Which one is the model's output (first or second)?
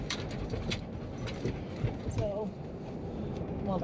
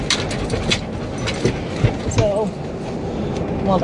first